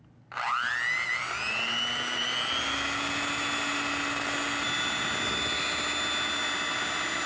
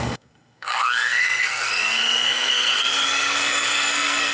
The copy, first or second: second